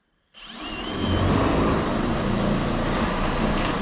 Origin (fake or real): fake